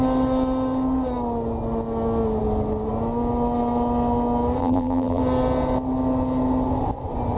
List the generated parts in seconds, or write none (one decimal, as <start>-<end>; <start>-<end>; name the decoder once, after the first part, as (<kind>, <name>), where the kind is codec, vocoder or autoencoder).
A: 4.6-5.2 (vocoder, BigVGAN v2)